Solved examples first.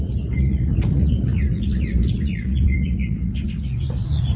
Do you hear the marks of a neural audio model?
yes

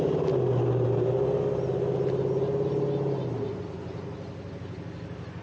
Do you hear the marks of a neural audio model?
no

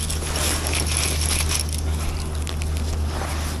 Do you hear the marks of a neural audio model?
no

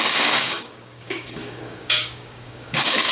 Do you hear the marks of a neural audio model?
yes